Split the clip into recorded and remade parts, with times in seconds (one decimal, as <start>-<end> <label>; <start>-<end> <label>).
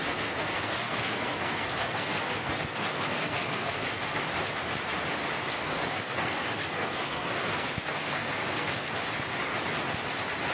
0.0-4.2 remade; 4.2-5.6 recorded; 5.6-8.9 remade; 8.9-10.5 recorded